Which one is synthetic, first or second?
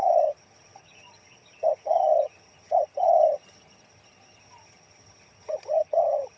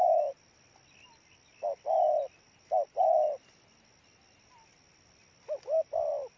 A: first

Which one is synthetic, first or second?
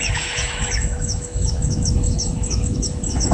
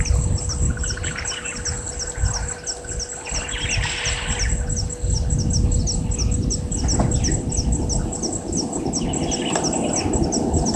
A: first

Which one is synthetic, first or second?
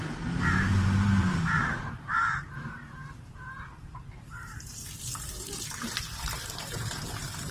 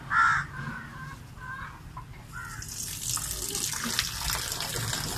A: first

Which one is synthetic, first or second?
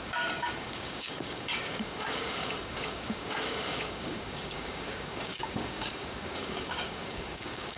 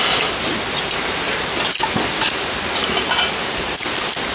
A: first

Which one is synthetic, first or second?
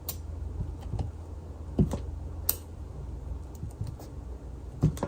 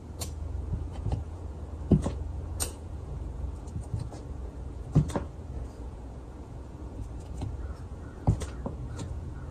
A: second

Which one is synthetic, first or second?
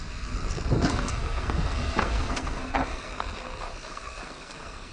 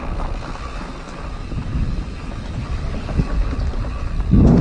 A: first